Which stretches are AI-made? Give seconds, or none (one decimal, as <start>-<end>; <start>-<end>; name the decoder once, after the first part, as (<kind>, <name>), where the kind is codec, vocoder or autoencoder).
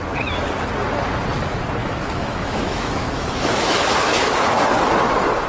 1.8-4.6 (autoencoder, DAC-VAE)